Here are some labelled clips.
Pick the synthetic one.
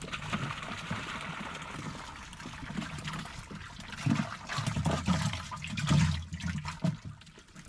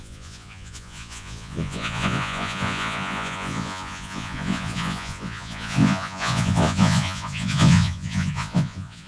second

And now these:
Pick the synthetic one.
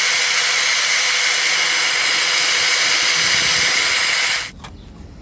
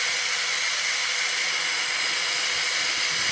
second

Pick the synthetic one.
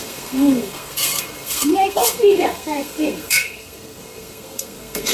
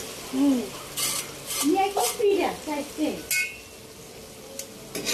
first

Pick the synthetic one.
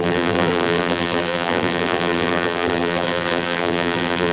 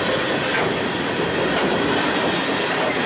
first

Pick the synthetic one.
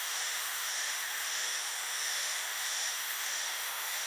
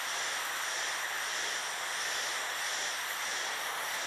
first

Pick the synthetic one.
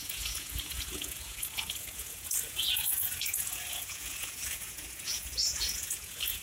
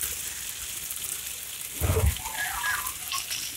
first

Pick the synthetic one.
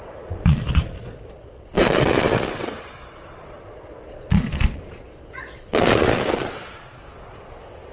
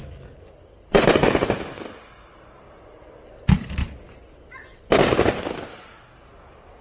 first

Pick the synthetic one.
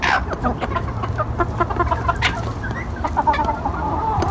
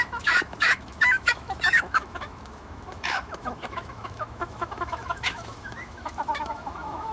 second